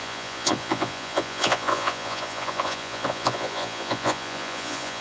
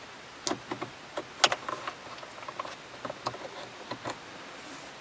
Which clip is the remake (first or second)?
first